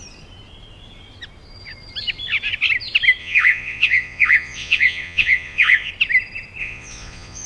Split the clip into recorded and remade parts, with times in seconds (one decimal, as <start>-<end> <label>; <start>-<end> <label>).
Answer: 0.0-3.2 recorded; 3.2-5.9 remade; 5.9-6.6 recorded; 6.6-7.5 remade